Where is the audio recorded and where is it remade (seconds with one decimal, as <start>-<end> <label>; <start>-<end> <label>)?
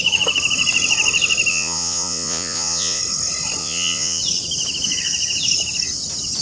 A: 0.0-1.5 recorded; 1.5-3.0 remade; 3.0-3.6 recorded; 3.6-4.2 remade; 4.2-6.4 recorded